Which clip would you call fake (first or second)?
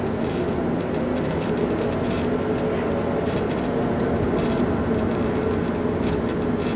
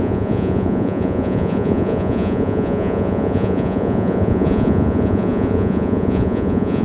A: second